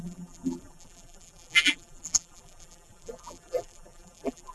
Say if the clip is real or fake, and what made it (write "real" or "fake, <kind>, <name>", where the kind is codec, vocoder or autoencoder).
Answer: fake, vocoder, BigVGAN v2